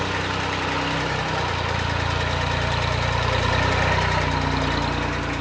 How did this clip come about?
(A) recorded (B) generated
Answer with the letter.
A